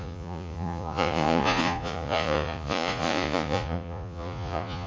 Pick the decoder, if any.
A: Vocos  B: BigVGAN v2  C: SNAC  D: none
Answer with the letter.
A